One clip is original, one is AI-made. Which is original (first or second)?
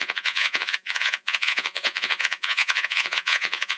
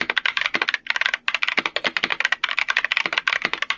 second